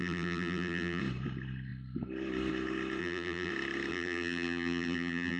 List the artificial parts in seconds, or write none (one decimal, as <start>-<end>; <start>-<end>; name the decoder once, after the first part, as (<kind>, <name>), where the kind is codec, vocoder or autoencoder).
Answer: 0.0-1.0 (vocoder, BigVGAN v2); 3.0-3.5; 3.9-5.4